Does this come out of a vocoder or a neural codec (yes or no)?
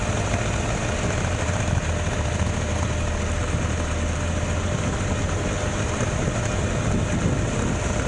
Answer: no